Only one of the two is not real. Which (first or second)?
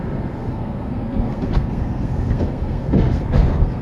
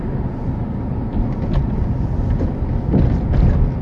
first